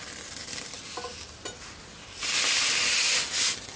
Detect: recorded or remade recorded